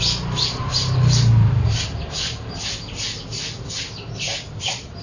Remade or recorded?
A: recorded